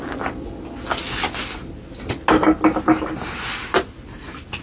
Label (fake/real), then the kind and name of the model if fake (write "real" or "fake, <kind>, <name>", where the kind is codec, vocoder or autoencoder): real